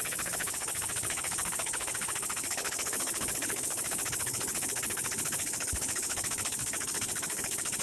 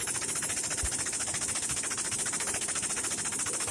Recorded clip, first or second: second